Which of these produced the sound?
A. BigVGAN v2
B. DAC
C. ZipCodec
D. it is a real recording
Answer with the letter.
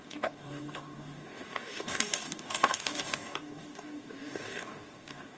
B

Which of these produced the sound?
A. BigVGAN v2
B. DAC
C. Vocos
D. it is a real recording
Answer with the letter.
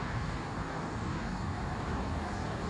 B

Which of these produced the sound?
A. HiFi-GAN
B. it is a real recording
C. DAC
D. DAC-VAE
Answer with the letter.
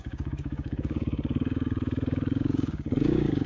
C